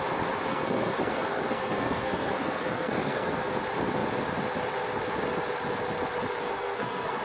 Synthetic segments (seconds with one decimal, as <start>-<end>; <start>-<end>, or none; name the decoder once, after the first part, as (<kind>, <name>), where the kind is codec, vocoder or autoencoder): 0.5-3.5 (codec, SNAC); 6.4-7.2